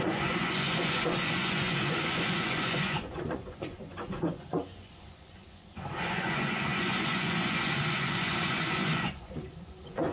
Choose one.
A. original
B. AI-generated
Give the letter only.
B